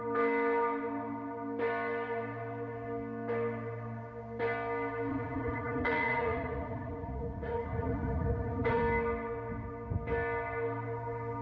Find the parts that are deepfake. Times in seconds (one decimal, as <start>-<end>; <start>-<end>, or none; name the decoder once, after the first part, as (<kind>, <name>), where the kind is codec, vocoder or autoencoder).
5.1-8.8 (vocoder, Vocos)